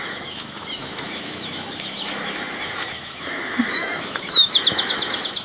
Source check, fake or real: fake